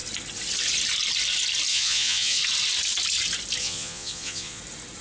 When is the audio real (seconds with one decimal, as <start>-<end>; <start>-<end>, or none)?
0.0-1.7; 2.4-3.6; 4.6-5.0